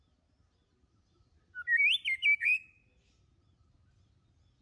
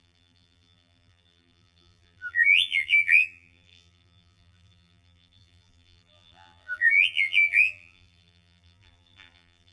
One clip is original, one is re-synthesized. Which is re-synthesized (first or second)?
second